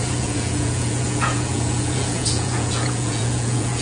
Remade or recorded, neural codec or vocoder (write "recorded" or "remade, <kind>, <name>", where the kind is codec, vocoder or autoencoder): remade, vocoder, Vocos